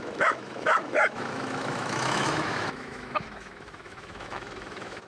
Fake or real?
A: fake